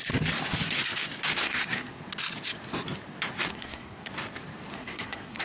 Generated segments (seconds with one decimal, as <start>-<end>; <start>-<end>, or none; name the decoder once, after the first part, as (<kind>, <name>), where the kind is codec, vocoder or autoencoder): 1.4-2.0 (codec, SNAC); 3.5-4.1; 4.7-5.4